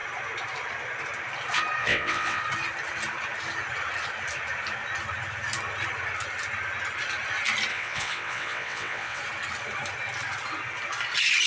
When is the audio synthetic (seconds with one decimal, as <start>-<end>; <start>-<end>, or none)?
1.8-2.4; 7.7-9.2

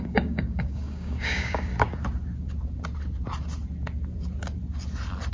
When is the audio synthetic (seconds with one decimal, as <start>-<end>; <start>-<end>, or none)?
0.0-1.7